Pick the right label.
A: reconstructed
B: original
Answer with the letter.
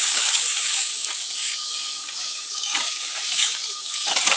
A